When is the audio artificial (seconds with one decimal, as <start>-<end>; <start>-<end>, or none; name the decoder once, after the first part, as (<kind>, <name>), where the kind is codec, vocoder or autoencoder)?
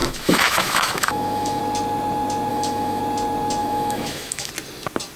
0.0-1.6 (autoencoder, DAC-VAE); 2.5-3.0; 3.6-4.5